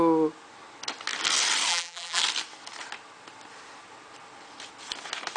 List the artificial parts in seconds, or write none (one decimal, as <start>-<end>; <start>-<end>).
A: 1.7-2.2